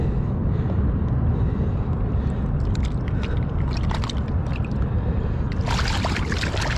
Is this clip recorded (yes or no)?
yes